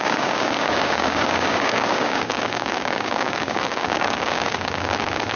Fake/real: fake